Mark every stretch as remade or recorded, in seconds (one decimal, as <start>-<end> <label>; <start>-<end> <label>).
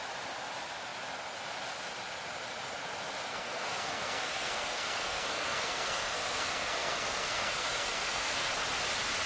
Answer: 0.0-3.3 recorded; 3.3-8.5 remade; 8.5-9.3 recorded